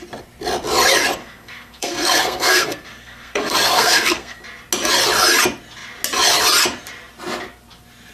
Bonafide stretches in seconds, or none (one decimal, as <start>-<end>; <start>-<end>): 0.0-1.2; 4.4-8.1